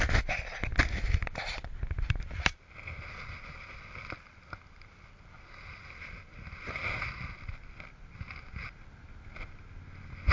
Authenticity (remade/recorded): recorded